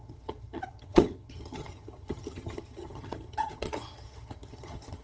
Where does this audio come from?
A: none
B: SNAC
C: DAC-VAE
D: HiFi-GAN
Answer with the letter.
D